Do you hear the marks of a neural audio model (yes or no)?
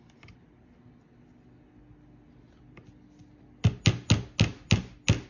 no